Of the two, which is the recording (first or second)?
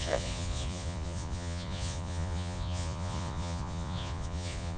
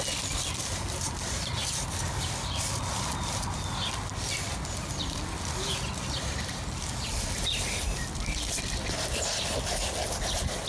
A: second